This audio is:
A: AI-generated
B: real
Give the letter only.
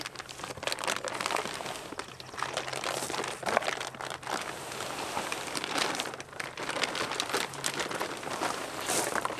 B